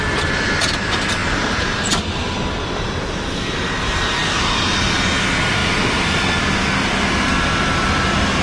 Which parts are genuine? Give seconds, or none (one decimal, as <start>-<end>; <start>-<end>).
0.0-1.2; 1.7-8.4